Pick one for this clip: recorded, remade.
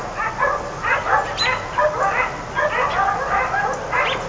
recorded